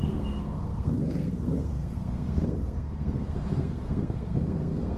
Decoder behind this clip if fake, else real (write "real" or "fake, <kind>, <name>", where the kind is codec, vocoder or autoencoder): fake, codec, SNAC